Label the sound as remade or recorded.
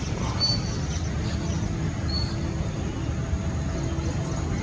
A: recorded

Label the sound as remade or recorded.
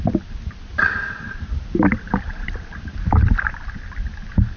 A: recorded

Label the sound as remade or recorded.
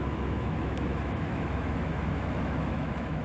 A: remade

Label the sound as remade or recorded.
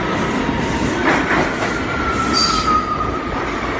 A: recorded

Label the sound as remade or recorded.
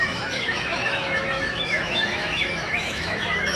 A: remade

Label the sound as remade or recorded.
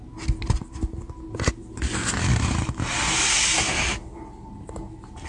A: recorded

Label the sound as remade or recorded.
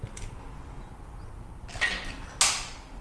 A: recorded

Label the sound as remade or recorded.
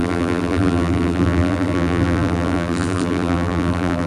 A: remade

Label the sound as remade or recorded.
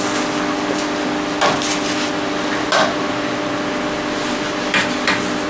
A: recorded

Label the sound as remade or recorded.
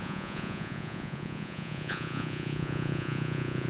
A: remade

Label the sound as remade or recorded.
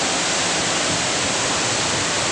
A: recorded